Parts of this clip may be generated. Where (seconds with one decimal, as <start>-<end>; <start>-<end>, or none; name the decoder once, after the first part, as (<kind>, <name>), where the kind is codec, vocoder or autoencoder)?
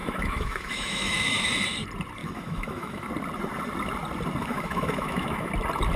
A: 0.0-1.5 (autoencoder, DAC-VAE); 2.2-3.0; 4.4-5.5